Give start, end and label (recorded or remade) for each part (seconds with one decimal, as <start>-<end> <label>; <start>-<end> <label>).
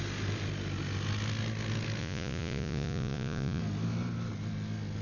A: 0.0-2.0 recorded; 2.0-3.6 remade; 3.6-5.0 recorded